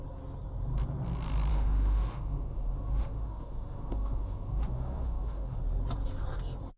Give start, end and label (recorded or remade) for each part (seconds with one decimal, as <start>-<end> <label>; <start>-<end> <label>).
0.0-1.5 recorded; 1.5-5.6 remade; 5.6-6.8 recorded